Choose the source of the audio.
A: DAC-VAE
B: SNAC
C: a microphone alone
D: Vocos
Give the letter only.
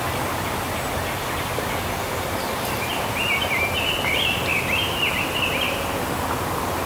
C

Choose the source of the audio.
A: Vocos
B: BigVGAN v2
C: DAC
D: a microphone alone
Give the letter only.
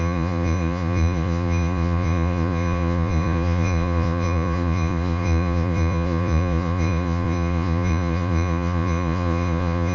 A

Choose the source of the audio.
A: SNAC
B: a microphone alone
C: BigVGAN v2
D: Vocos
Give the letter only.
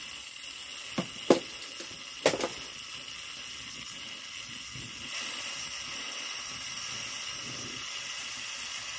B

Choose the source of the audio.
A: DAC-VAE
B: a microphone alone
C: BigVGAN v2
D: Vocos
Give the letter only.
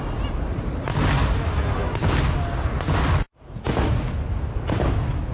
B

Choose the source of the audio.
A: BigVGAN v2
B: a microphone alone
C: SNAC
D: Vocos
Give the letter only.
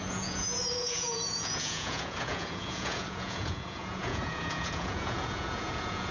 D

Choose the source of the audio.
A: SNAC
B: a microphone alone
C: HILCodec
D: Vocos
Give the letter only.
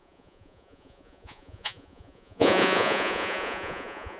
D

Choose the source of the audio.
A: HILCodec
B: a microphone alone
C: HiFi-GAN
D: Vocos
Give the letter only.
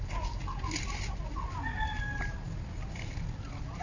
B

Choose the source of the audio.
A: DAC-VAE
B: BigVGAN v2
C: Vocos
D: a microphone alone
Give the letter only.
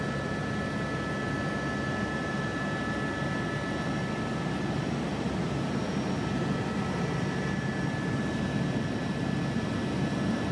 D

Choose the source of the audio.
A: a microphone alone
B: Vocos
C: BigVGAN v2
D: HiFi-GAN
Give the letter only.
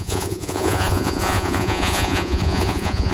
B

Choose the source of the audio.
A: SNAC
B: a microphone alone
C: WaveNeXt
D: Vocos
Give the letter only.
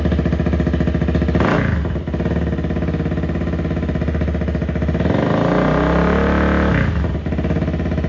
B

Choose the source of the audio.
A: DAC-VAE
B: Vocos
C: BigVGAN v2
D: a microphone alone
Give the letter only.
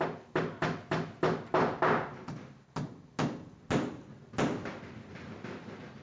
D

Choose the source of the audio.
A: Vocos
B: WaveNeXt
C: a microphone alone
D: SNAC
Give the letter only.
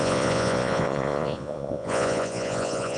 A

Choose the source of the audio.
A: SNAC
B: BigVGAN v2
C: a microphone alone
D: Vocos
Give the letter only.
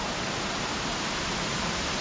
C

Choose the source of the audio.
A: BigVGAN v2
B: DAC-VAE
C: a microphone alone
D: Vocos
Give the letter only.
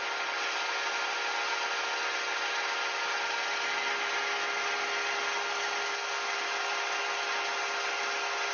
C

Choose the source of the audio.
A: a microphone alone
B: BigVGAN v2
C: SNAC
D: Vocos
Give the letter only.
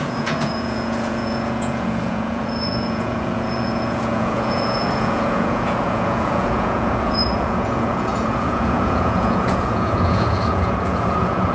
D